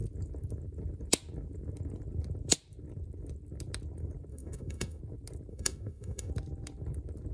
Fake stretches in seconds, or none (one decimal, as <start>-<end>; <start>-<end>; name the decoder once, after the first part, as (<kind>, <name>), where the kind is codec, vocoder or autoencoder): 4.3-5.0 (autoencoder, DAC-VAE); 5.5-6.3